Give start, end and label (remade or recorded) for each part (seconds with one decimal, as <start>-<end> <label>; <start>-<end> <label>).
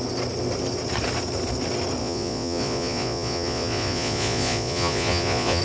0.0-2.0 recorded; 2.0-5.6 remade